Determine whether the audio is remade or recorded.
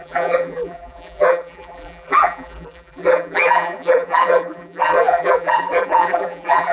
remade